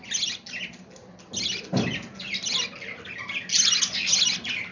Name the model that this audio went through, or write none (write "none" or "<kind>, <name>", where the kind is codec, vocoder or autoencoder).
none